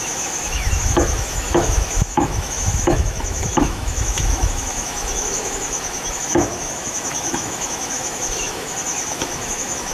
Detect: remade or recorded remade